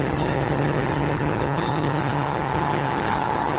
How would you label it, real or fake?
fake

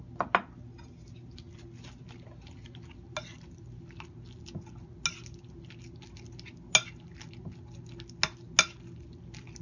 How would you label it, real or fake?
real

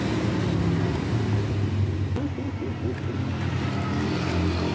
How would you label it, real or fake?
real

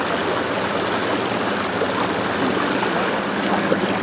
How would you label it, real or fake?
real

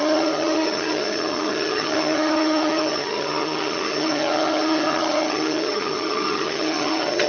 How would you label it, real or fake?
fake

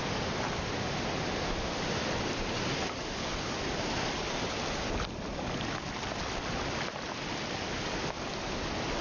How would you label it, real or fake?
real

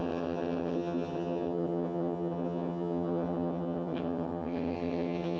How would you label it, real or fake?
fake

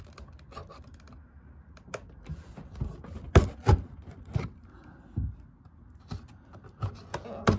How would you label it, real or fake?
real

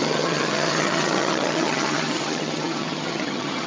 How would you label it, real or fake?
fake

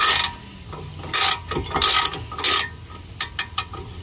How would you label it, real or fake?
real